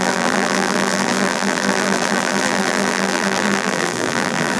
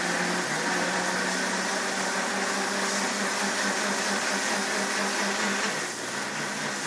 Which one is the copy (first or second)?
first